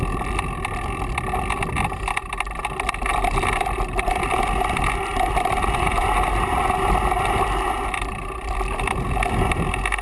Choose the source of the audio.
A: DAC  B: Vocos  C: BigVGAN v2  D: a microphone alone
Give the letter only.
C